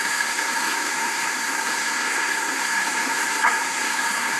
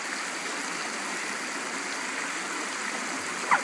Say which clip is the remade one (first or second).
first